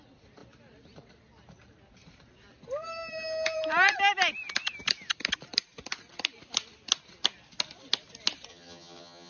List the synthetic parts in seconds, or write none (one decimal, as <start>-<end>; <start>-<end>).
8.5-9.3